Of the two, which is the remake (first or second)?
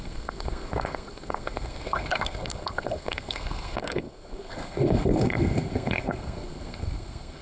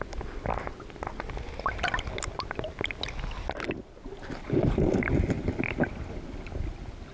first